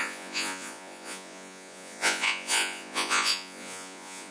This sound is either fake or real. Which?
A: fake